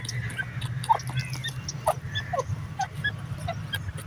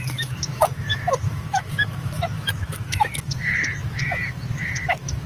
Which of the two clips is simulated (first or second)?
second